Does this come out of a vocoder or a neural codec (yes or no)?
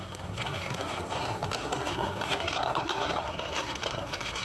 yes